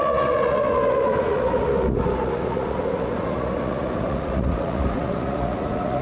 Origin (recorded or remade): remade